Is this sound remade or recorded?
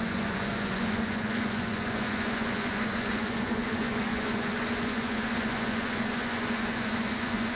remade